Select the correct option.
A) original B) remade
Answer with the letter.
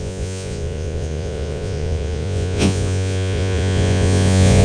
B